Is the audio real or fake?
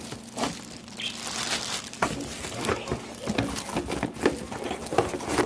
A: real